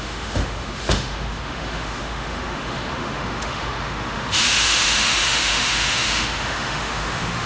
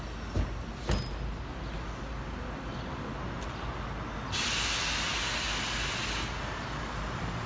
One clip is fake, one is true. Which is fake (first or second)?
first